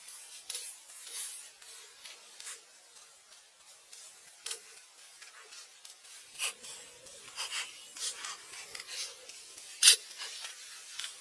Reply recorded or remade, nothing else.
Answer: recorded